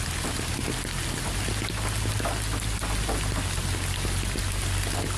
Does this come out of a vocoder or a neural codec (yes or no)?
no